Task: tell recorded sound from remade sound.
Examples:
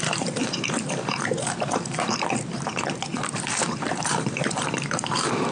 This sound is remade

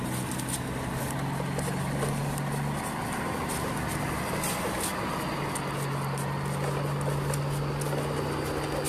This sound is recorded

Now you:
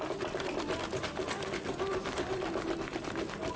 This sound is remade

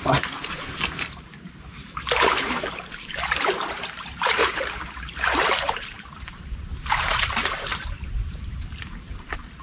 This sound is remade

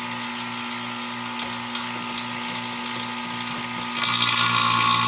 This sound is recorded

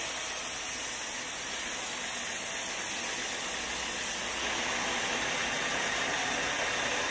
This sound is recorded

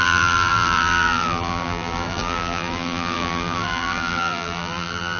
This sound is remade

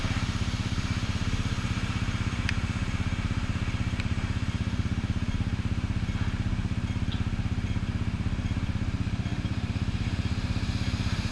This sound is remade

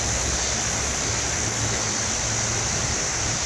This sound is recorded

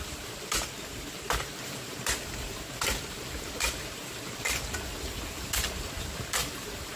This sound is remade